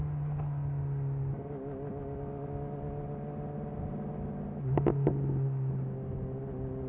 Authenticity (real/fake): real